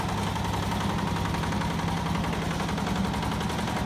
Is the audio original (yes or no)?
yes